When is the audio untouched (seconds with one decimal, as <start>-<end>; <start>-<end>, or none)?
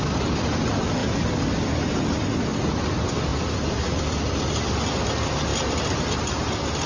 0.0-1.0; 1.6-3.3; 5.1-5.5; 6.4-6.9